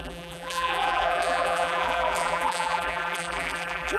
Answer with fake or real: fake